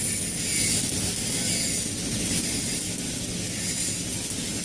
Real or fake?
real